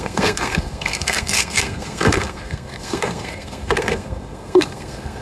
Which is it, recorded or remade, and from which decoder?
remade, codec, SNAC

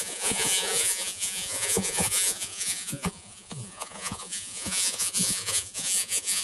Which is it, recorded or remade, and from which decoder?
remade, vocoder, Vocos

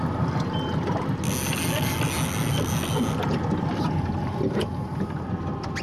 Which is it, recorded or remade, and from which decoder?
recorded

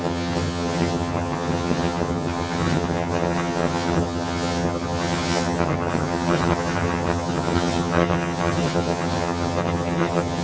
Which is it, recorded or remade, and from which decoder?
remade, vocoder, HiFi-GAN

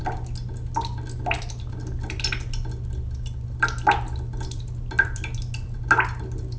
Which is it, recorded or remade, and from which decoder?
recorded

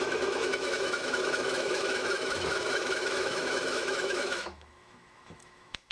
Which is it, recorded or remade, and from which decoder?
remade, autoencoder, DAC-VAE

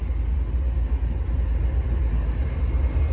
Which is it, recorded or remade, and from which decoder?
recorded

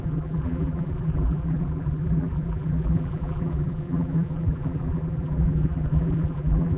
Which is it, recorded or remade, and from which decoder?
remade, vocoder, BigVGAN v2